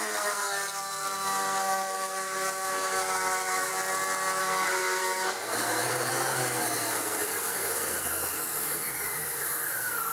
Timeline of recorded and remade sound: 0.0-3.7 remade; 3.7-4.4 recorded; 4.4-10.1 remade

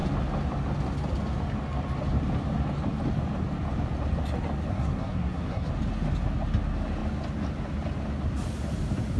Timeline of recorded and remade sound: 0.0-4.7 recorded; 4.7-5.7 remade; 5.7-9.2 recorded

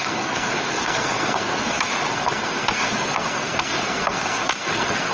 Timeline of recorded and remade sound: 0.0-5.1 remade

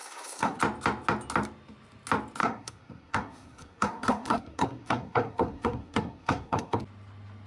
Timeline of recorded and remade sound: 0.0-0.6 remade; 0.6-2.4 recorded; 2.4-6.8 remade; 6.8-7.5 recorded

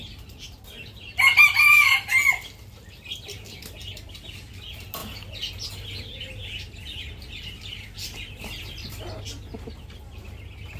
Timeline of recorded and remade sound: 0.0-10.8 recorded